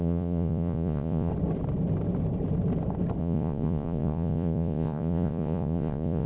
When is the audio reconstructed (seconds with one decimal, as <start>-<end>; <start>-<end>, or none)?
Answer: 0.0-1.3; 3.2-6.3